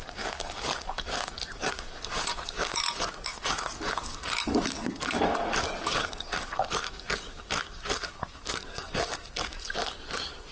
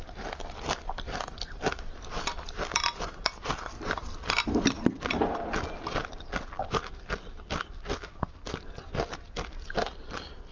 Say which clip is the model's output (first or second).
first